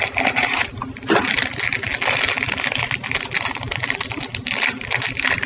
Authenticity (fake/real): real